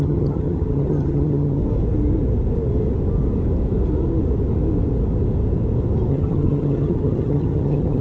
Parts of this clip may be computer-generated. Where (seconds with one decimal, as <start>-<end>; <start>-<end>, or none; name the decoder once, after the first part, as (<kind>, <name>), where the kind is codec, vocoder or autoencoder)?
0.0-1.6 (vocoder, HiFi-GAN); 6.1-8.0